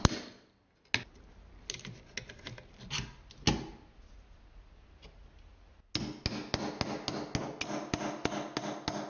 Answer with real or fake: real